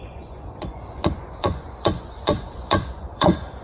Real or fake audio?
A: fake